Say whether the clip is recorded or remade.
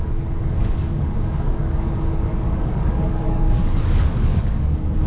remade